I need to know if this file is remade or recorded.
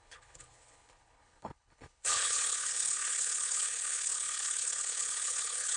remade